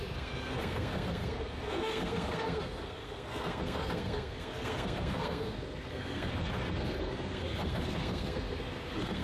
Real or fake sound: fake